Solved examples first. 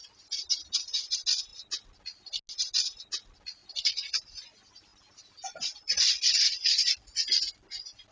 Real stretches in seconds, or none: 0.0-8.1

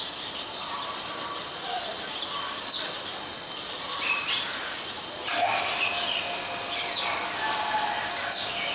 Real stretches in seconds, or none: 3.3-4.7

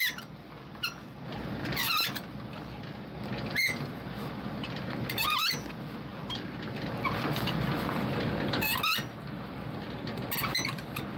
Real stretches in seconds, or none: 0.0-11.2

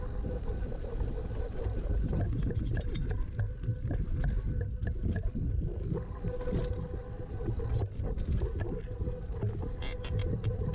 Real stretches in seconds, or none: 0.0-10.7